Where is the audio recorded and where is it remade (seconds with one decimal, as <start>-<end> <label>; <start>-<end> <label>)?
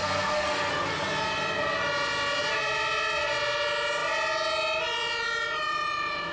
0.0-0.7 remade; 0.7-6.3 recorded